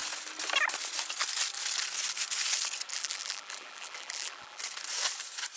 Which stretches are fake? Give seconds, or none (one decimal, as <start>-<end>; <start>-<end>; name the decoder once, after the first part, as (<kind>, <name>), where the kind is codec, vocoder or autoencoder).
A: 2.9-4.6 (vocoder, BigVGAN v2)